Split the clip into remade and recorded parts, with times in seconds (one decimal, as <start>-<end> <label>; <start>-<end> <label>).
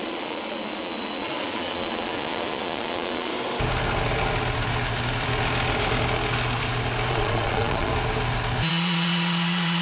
0.0-3.3 remade; 3.3-7.1 recorded; 7.1-7.9 remade; 7.9-8.7 recorded; 8.7-9.8 remade